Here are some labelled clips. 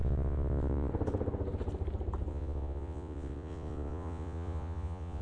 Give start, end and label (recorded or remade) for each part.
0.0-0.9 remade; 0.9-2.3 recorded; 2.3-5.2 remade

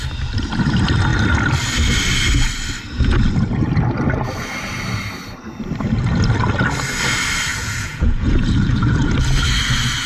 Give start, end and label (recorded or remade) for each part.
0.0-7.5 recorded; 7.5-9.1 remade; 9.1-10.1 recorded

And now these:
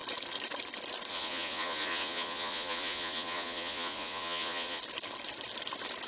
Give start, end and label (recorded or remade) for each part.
0.0-1.1 recorded; 1.1-4.8 remade; 4.8-6.1 recorded

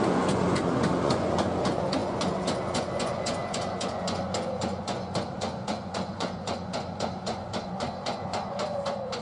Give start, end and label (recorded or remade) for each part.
0.0-9.2 remade